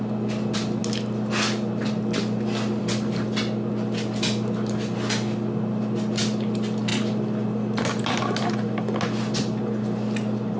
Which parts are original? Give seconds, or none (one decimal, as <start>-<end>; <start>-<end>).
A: 0.0-10.6